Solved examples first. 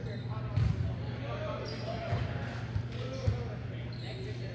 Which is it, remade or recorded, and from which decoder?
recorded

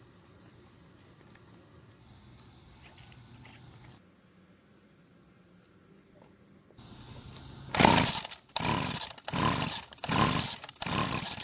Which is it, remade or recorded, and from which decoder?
recorded